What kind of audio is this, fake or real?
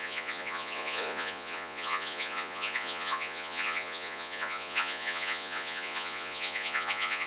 fake